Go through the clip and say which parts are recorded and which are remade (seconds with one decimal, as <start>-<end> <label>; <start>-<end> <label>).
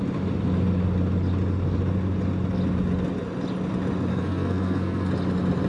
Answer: 0.0-4.1 recorded; 4.1-5.1 remade; 5.1-5.7 recorded